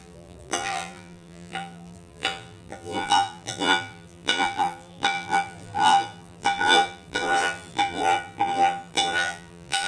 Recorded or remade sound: remade